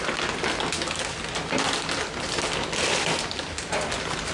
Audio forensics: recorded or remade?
recorded